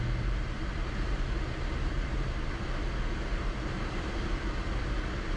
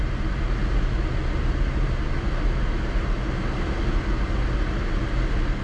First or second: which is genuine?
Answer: second